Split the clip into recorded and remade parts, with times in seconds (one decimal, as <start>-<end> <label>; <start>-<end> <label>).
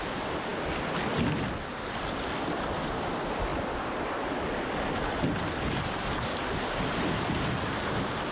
0.0-8.3 recorded